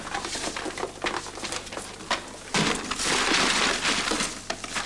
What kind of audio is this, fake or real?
real